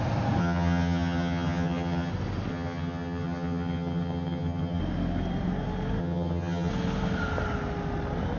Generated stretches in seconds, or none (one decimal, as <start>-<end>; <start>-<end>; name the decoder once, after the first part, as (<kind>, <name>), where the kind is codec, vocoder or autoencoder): 0.4-2.1 (vocoder, HiFi-GAN); 2.5-4.8; 6.0-6.7